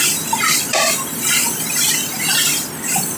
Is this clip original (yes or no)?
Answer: no